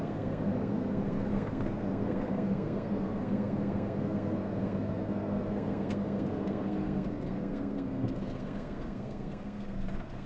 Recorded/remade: remade